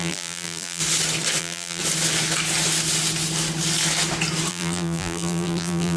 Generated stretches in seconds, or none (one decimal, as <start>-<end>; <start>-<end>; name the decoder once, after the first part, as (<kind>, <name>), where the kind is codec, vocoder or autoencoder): 0.0-0.8 (vocoder, BigVGAN v2); 1.4-1.8; 4.5-6.0